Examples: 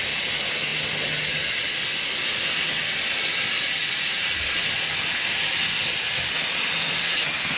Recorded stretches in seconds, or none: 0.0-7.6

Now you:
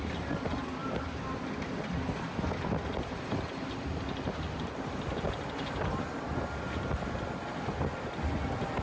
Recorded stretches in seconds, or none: 0.0-8.8